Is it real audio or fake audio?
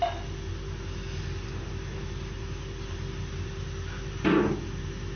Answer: real